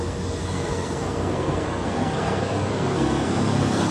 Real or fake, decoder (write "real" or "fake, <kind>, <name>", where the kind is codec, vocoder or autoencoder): fake, codec, SNAC